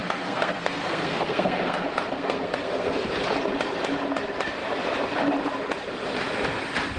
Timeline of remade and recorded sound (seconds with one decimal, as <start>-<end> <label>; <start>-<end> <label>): 0.0-3.1 remade; 3.1-7.0 recorded